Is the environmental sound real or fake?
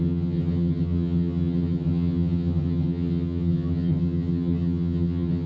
fake